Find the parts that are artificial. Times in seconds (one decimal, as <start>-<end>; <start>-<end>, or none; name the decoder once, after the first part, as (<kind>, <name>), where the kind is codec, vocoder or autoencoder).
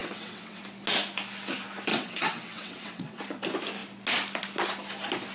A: 0.0-0.6 (vocoder, WaveNeXt); 1.9-3.2